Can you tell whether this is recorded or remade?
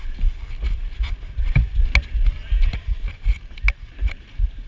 recorded